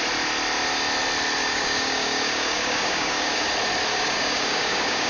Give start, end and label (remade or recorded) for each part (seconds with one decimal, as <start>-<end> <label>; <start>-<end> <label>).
0.0-1.4 recorded; 1.4-3.5 remade; 3.5-3.9 recorded; 3.9-5.1 remade